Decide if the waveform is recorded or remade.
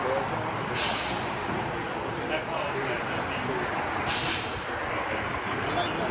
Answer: recorded